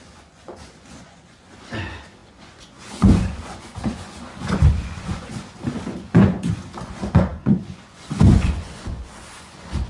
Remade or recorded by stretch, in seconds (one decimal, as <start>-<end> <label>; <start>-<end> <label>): 0.0-9.9 remade